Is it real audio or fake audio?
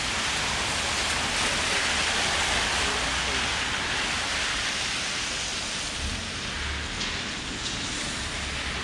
real